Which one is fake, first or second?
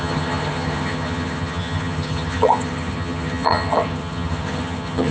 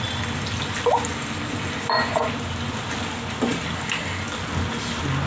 first